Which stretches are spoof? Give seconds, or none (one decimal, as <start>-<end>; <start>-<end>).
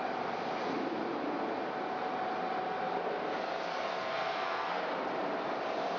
3.7-4.8